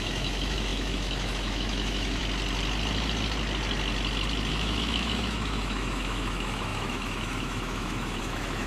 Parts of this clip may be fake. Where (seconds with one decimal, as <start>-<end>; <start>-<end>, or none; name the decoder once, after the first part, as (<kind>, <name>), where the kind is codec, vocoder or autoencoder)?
0.0-2.2 (autoencoder, DAC-VAE); 4.5-8.7